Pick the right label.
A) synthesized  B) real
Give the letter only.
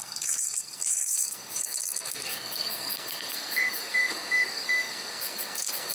A